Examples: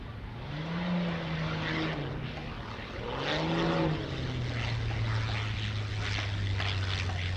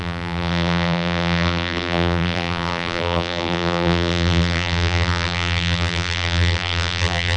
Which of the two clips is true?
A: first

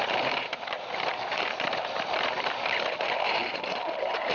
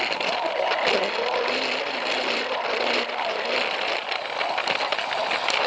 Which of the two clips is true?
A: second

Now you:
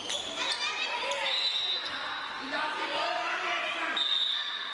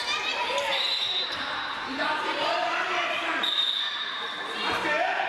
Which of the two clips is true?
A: first